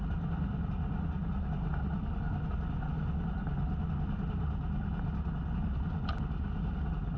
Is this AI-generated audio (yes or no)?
no